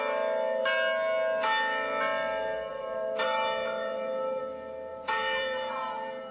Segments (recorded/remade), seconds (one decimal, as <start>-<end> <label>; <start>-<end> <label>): 0.0-2.7 recorded; 2.7-4.4 remade; 4.4-4.9 recorded; 4.9-6.3 remade